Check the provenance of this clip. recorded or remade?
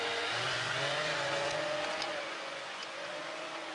remade